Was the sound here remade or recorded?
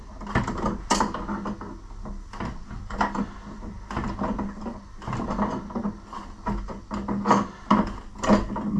recorded